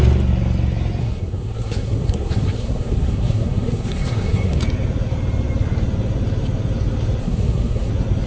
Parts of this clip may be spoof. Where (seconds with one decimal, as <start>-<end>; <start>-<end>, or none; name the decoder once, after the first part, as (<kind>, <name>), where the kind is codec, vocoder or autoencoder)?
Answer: 1.0-4.6 (codec, SNAC); 7.2-7.9